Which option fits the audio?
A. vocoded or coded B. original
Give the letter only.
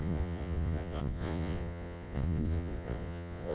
A